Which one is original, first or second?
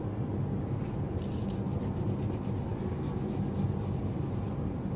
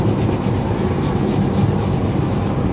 first